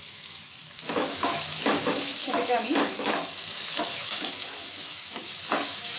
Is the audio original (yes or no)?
no